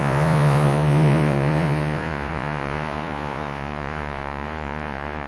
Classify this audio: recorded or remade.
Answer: remade